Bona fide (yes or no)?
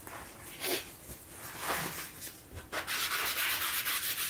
yes